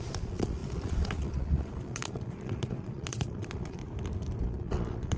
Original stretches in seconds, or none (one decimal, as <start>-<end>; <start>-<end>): 3.8-4.4